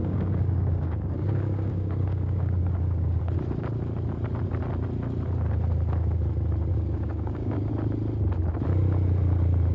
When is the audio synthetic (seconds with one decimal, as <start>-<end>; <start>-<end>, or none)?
0.0-3.2; 6.7-7.7